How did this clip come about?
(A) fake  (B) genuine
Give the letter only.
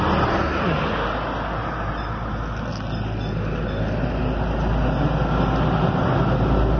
B